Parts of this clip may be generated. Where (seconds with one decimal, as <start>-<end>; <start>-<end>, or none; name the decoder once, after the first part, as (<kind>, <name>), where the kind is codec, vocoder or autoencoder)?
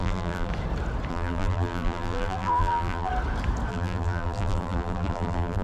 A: 0.0-0.5 (vocoder, BigVGAN v2); 1.1-3.1; 3.7-5.6